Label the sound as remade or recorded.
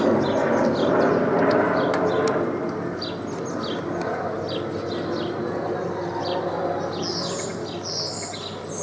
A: recorded